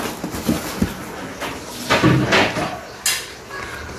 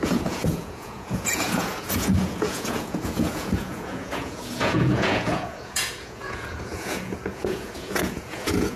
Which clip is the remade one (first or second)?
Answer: second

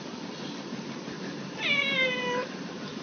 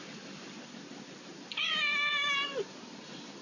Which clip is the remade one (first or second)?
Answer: second